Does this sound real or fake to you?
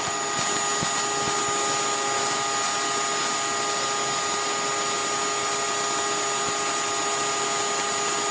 real